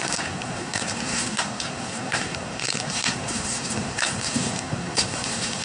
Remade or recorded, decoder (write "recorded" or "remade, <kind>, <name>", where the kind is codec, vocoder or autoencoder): remade, codec, SNAC